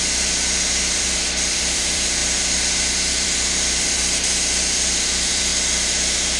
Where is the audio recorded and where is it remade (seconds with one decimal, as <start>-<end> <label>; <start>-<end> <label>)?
0.0-2.2 remade; 2.2-3.1 recorded; 3.1-5.5 remade; 5.5-6.4 recorded

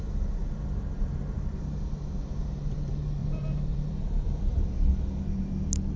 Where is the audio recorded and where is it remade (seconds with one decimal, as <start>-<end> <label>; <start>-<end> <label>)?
0.0-3.2 recorded; 3.2-4.4 remade; 4.4-6.0 recorded

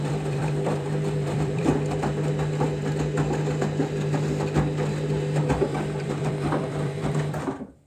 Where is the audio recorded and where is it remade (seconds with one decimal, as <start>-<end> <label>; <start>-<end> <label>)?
0.0-1.7 remade; 1.7-5.5 recorded; 5.5-7.9 remade

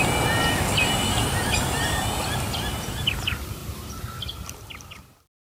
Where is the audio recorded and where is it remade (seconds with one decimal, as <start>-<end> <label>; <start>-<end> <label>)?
0.0-5.4 recorded

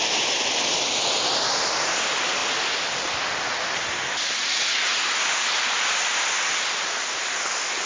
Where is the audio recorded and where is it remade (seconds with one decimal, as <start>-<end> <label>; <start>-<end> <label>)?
0.0-4.9 recorded; 4.9-6.2 remade; 6.2-7.9 recorded

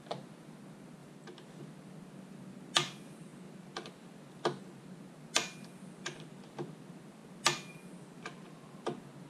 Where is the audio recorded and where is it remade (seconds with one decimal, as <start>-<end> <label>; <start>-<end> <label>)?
0.0-1.0 recorded; 1.0-1.6 remade; 1.6-9.3 recorded

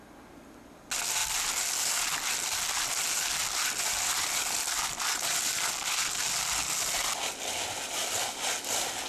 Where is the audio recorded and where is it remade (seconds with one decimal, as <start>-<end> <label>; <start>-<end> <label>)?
0.0-3.4 recorded; 3.4-5.7 remade; 5.7-9.1 recorded